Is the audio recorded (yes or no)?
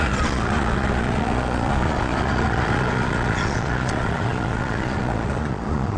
no